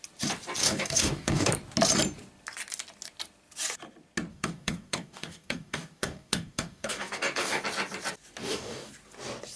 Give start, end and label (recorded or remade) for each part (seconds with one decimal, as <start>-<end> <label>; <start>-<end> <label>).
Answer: 0.0-0.6 recorded; 0.6-1.5 remade; 1.5-4.3 recorded; 4.3-7.6 remade; 7.6-8.4 recorded; 8.4-8.9 remade; 8.9-9.6 recorded